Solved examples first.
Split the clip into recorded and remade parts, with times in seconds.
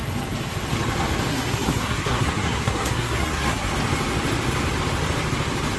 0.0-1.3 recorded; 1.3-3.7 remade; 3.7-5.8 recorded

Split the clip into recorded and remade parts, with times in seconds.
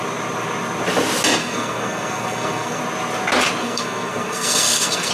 0.0-1.4 recorded; 1.4-2.8 remade; 2.8-3.6 recorded; 3.6-5.1 remade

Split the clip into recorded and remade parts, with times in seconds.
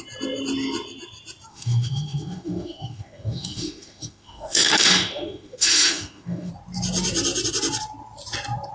0.0-1.5 recorded; 1.5-6.5 remade; 6.5-8.7 recorded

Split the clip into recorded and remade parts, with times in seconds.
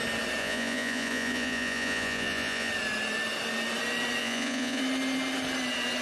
0.0-0.4 recorded; 0.4-2.7 remade; 2.7-4.2 recorded; 4.2-4.8 remade; 4.8-6.0 recorded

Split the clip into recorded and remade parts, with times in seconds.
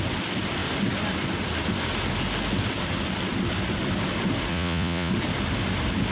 0.0-4.5 recorded; 4.5-5.1 remade; 5.1-6.1 recorded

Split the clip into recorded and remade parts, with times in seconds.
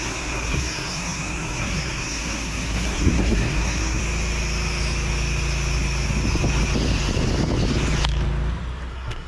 0.0-4.0 remade; 4.0-8.9 recorded; 8.9-9.3 remade